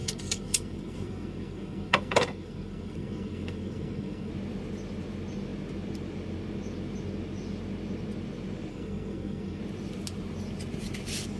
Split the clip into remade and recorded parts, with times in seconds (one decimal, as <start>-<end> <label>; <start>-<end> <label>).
0.0-4.3 remade; 4.3-8.7 recorded; 8.7-9.6 remade; 9.6-11.4 recorded